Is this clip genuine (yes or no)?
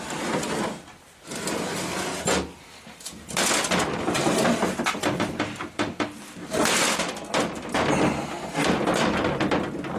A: yes